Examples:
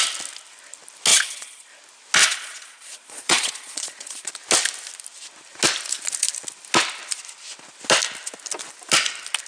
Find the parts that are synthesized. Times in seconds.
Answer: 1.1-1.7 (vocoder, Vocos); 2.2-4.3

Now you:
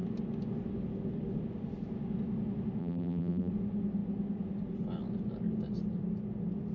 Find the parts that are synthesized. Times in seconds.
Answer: 2.8-3.5 (vocoder, BigVGAN v2)

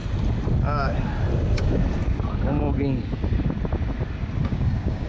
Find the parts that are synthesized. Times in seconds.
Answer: 4.4-5.1 (codec, DAC)

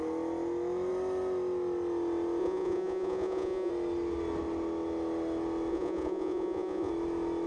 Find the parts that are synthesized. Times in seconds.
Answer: 2.4-3.7 (vocoder, Vocos); 5.7-6.9

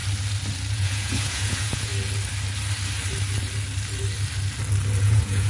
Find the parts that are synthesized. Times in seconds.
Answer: 0.7-1.9 (vocoder, Vocos); 5.0-5.5

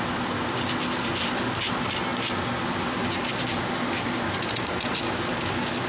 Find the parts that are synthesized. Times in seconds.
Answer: none